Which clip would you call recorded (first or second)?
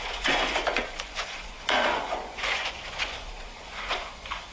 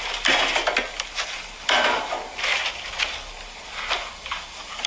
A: second